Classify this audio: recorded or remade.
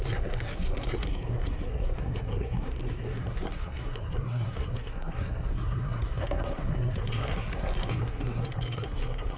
remade